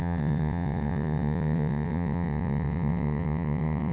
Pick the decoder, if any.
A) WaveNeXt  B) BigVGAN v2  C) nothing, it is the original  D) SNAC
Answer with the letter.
A